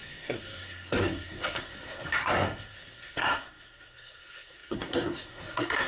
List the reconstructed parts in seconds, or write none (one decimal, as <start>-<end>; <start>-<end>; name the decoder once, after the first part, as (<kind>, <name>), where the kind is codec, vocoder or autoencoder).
0.0-5.9 (codec, SNAC)